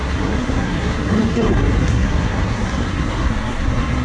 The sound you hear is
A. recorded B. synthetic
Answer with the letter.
B